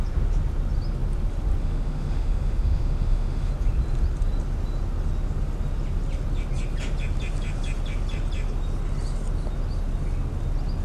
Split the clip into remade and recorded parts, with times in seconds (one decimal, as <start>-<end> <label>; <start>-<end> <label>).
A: 0.0-1.6 recorded; 1.6-3.5 remade; 3.5-10.8 recorded